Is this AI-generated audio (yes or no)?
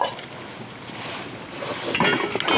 no